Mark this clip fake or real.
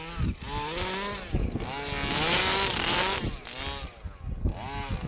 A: real